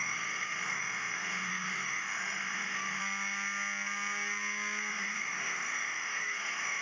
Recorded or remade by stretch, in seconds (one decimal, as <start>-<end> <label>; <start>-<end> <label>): 0.0-3.0 remade; 3.0-4.9 recorded; 4.9-6.8 remade

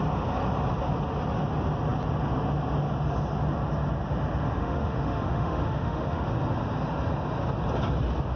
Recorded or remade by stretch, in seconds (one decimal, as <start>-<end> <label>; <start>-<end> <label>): 0.0-4.6 recorded; 4.6-6.3 remade; 6.3-8.4 recorded

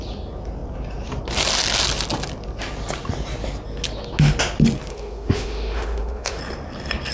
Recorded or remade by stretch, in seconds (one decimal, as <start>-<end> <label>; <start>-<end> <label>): 0.0-4.9 recorded; 4.9-6.4 remade; 6.4-7.1 recorded